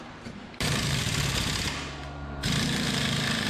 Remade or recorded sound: remade